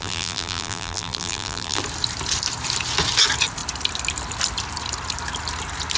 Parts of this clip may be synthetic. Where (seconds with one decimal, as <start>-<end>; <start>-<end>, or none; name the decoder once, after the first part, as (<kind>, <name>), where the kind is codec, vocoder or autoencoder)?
0.0-1.8 (vocoder, BigVGAN v2)